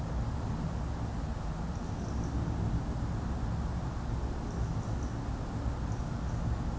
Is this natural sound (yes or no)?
yes